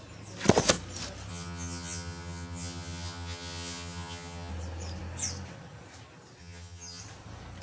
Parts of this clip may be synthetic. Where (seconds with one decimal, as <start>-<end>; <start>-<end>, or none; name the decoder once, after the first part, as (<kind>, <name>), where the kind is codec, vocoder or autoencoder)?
1.3-4.5 (vocoder, HiFi-GAN); 6.4-7.0